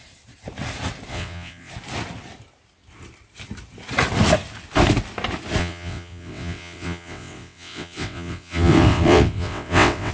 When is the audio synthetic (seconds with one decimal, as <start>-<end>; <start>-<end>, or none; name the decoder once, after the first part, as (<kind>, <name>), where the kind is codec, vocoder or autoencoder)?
1.1-1.7 (vocoder, WaveNeXt); 5.6-10.1